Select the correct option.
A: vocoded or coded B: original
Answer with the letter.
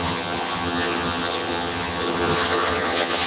A